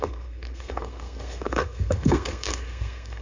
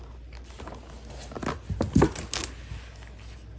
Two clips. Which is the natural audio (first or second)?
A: second